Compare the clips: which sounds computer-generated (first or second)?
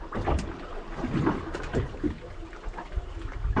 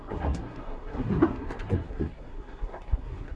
second